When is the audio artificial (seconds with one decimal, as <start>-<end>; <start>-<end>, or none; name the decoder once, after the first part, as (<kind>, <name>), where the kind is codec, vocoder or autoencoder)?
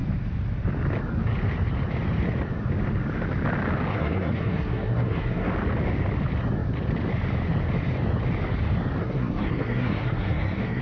3.9-5.5 (codec, SNAC); 9.0-10.8